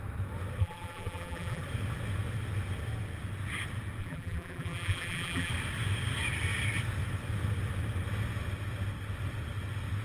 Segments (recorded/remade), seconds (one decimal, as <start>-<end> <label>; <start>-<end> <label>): 0.0-0.6 recorded; 0.6-1.6 remade; 1.6-4.0 recorded; 4.0-5.5 remade; 5.5-10.0 recorded